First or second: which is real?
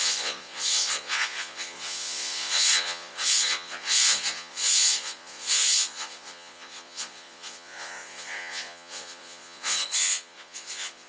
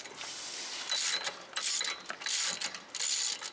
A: second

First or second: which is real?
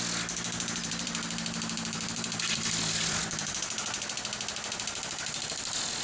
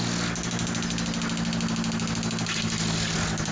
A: second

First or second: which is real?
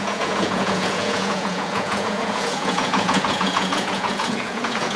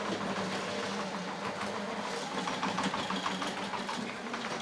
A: second